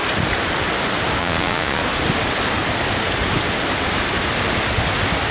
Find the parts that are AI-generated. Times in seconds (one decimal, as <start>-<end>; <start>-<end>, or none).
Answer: 1.2-1.8

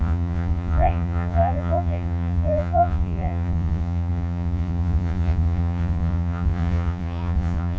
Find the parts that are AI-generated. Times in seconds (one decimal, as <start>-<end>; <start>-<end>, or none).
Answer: 0.0-7.8

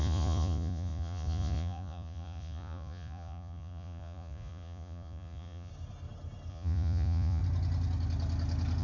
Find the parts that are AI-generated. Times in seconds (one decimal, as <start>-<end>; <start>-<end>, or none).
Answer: 0.0-5.7; 6.5-7.4

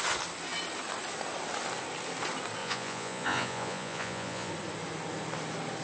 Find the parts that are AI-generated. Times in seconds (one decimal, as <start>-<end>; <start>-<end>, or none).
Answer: 2.6-4.5

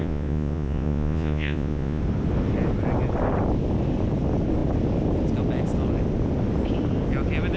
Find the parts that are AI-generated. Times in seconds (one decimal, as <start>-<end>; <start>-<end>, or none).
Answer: 0.0-2.0

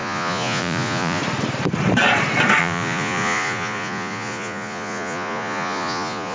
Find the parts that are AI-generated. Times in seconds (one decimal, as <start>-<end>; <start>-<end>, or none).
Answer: 0.0-1.2; 2.6-6.3

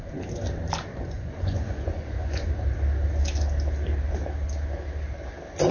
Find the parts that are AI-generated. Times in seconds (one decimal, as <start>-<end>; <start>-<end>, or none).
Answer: 0.9-2.5

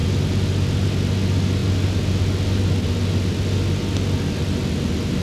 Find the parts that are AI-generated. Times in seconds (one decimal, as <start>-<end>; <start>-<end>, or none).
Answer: none